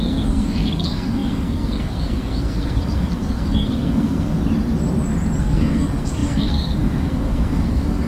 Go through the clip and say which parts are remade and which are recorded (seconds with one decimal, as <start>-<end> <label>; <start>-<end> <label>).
0.0-4.4 remade; 4.4-5.4 recorded; 5.4-8.1 remade